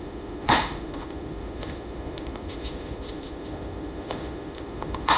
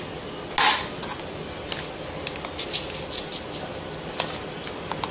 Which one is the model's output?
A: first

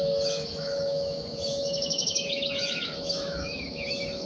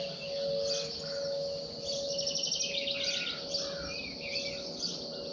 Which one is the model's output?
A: first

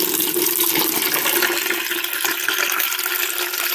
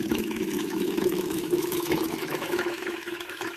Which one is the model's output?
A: second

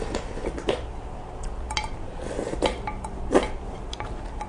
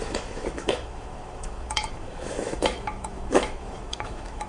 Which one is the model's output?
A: second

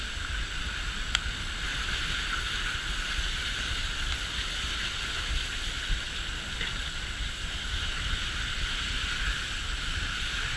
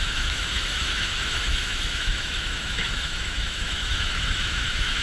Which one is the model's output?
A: second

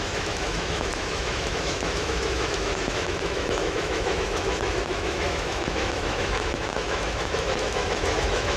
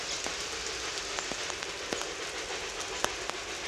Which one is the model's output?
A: first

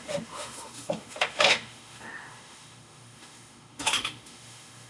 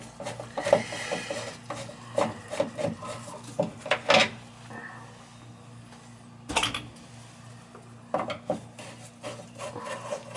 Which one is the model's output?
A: first